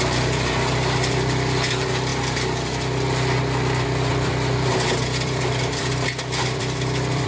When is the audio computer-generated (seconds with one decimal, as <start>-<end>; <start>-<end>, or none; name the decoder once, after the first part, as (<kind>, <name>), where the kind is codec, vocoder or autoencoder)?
0.0-2.1 (vocoder, BigVGAN v2); 4.1-7.3